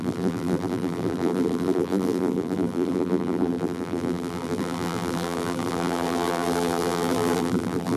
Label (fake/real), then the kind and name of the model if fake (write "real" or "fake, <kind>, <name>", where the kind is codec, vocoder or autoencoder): fake, vocoder, BigVGAN v2